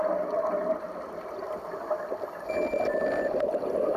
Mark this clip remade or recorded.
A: recorded